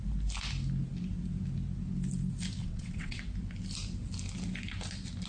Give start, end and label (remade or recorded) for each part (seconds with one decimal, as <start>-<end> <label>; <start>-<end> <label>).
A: 0.0-2.6 recorded; 2.6-3.2 remade; 3.2-5.3 recorded